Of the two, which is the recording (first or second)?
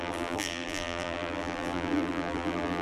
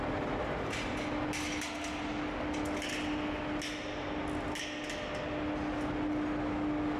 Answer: second